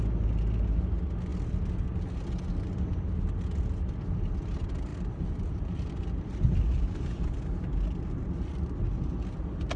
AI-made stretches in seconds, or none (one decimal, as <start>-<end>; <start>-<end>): none